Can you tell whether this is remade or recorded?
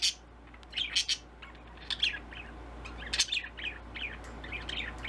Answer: recorded